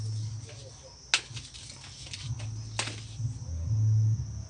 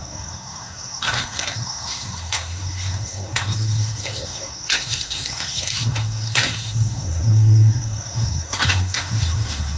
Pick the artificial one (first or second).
second